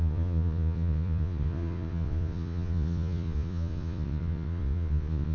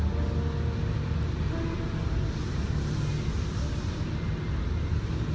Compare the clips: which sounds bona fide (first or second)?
second